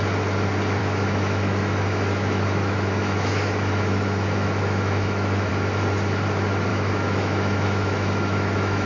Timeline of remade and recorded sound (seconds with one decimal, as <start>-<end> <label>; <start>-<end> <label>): 0.0-0.8 recorded; 0.8-5.5 remade; 5.5-6.7 recorded; 6.7-8.9 remade